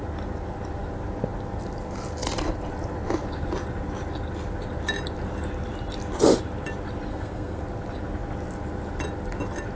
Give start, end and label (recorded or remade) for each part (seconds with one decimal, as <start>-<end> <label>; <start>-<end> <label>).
0.0-7.1 recorded; 7.1-7.6 remade; 7.6-9.8 recorded